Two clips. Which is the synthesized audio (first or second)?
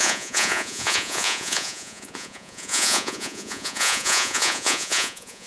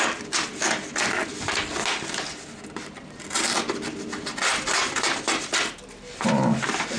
first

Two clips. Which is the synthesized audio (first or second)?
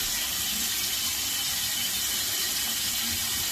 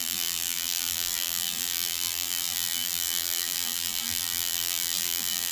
second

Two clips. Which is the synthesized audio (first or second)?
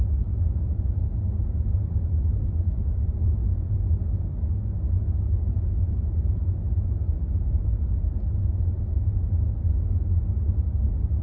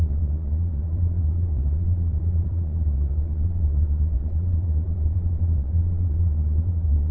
second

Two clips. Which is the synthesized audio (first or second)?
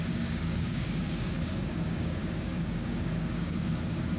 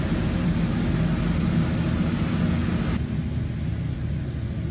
first